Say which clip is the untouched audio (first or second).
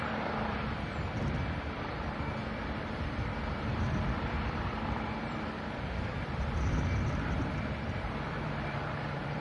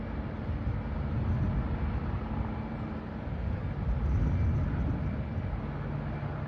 second